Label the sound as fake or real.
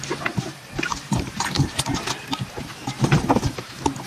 fake